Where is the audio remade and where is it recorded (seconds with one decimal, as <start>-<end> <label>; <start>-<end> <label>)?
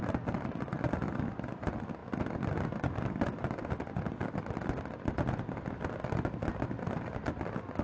0.0-7.8 recorded